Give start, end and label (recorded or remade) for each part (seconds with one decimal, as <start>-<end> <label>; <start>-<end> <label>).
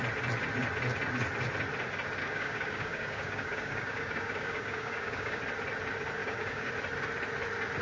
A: 0.0-2.2 recorded; 2.2-5.4 remade; 5.4-6.2 recorded; 6.2-6.7 remade; 6.7-7.8 recorded